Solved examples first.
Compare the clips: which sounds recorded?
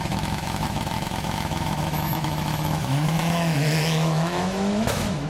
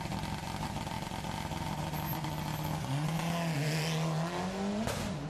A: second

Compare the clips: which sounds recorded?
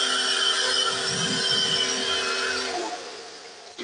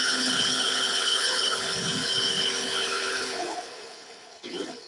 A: first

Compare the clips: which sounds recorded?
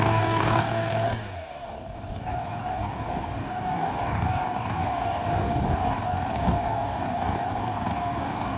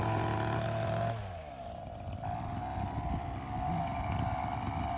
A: second